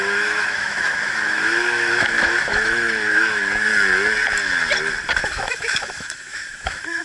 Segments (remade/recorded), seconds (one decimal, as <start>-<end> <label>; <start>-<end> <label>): 0.0-3.7 remade; 3.7-5.2 recorded; 5.2-7.0 remade